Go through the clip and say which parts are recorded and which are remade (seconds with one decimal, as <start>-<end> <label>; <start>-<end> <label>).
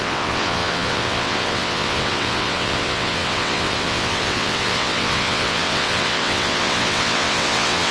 0.0-7.9 remade